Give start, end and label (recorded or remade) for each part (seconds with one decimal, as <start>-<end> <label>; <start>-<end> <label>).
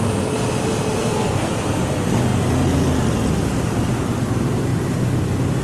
0.0-1.0 recorded; 1.0-1.5 remade; 1.5-5.6 recorded